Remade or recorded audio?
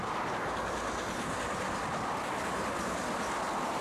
recorded